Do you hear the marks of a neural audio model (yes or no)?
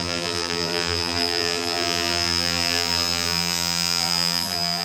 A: yes